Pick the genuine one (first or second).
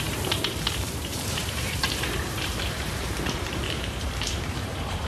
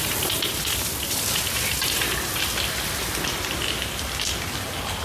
second